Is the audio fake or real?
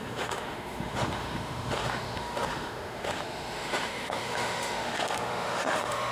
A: fake